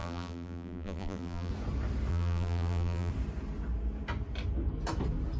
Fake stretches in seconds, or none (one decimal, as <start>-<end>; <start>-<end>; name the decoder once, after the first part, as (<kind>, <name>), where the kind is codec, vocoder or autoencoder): 0.0-1.5 (vocoder, BigVGAN v2); 2.1-3.1